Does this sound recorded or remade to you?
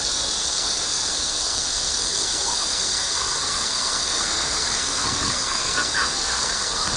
remade